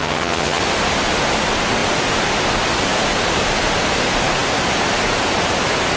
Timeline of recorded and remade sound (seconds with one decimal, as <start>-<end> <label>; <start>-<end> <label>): 0.0-0.6 remade; 0.6-6.0 recorded